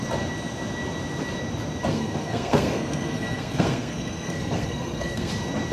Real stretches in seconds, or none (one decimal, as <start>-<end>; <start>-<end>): 0.0-1.9; 5.3-5.7